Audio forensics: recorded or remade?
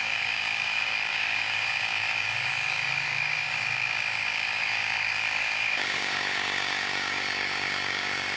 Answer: remade